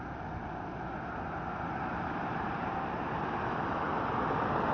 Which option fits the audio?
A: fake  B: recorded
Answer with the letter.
B